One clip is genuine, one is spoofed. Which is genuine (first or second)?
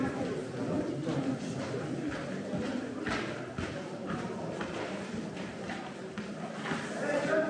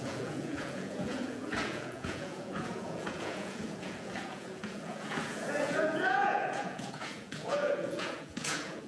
first